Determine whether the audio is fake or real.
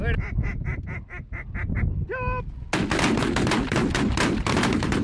real